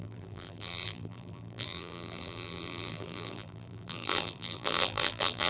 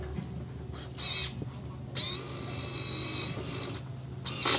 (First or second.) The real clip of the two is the second